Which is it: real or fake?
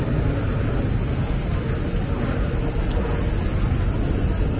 real